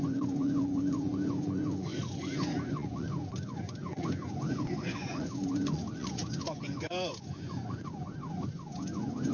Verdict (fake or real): fake